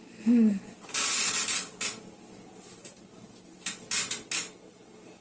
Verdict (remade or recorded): recorded